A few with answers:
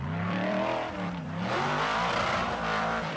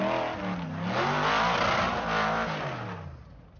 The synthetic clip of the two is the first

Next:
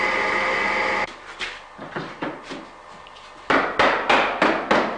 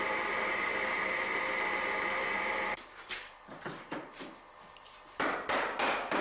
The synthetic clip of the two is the second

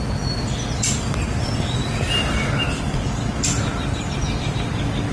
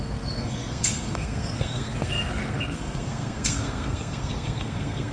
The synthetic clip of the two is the second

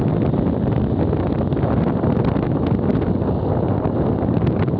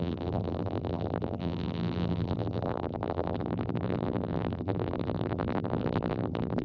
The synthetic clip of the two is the second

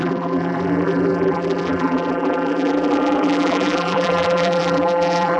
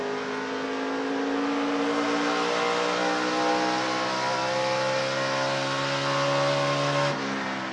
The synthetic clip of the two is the first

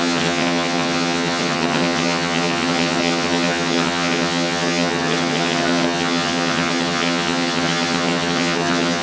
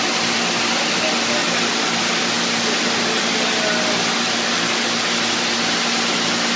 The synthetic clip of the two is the first